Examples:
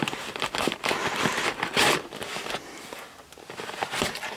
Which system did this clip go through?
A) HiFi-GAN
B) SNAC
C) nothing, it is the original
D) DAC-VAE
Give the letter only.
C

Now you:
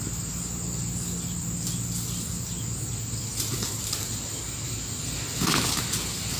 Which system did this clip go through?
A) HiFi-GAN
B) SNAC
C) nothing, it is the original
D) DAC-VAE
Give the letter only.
C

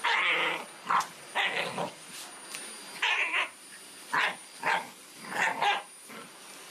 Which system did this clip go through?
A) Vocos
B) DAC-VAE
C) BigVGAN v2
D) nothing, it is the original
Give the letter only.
D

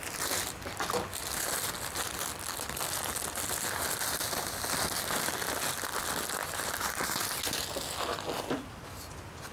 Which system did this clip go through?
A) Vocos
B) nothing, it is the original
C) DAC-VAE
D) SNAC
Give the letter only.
B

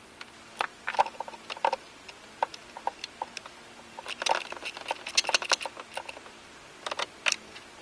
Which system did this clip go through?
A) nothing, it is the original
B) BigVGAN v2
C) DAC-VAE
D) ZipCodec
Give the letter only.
A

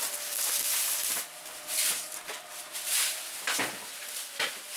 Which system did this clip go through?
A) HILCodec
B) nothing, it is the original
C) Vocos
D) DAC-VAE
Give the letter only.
B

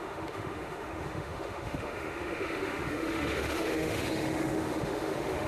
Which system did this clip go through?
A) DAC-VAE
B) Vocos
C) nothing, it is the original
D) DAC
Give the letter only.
A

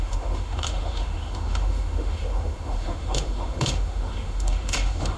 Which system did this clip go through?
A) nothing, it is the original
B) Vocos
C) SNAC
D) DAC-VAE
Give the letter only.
D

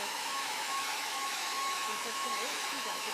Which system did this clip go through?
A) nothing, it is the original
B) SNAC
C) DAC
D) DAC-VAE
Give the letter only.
D